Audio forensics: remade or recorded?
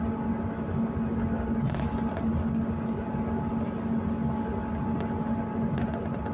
recorded